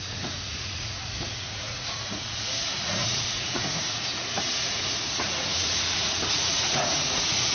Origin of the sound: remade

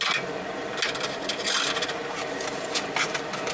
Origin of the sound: recorded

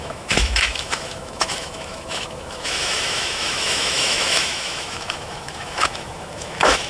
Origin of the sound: remade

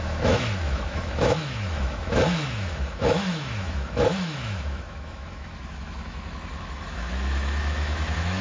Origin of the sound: remade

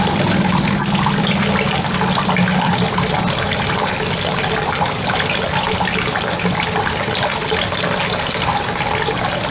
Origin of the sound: recorded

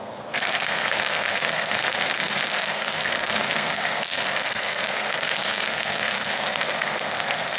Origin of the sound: remade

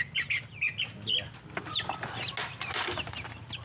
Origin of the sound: recorded